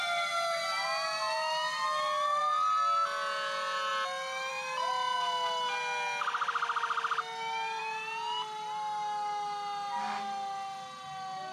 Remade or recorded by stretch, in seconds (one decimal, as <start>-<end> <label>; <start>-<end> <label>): 0.0-11.5 recorded